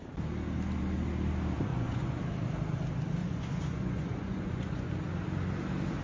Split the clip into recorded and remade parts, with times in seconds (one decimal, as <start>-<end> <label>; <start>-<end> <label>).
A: 0.0-1.7 recorded; 1.7-2.2 remade; 2.2-3.2 recorded; 3.2-4.9 remade; 4.9-6.0 recorded